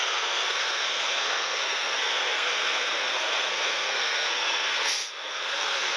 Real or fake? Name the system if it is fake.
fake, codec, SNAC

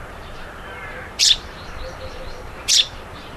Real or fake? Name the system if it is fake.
fake, vocoder, BigVGAN v2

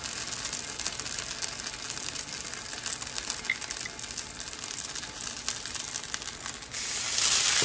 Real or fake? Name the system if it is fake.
real